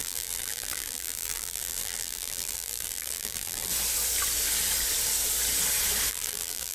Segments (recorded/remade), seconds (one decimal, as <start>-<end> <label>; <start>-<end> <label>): 0.0-3.7 remade; 3.7-6.1 recorded; 6.1-6.7 remade